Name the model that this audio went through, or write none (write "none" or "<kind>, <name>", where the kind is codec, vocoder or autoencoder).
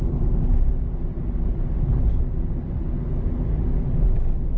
none